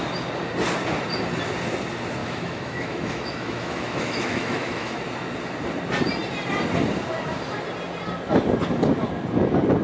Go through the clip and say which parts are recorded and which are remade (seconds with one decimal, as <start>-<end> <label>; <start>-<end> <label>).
0.0-2.2 recorded; 2.2-5.0 remade; 5.0-9.8 recorded